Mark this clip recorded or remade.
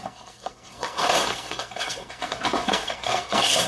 remade